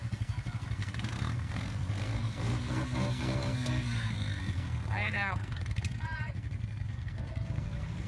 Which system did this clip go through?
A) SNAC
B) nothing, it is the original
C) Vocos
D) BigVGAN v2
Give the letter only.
A